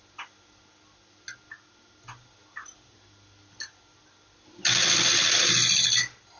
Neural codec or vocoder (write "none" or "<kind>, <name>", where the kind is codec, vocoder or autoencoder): none